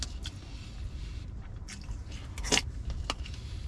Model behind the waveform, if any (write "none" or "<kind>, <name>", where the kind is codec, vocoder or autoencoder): none